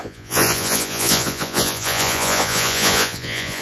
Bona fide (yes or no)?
no